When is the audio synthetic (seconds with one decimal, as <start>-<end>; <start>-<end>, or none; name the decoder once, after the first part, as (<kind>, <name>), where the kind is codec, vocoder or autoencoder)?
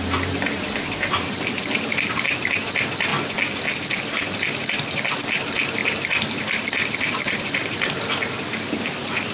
5.8-7.9 (vocoder, BigVGAN v2)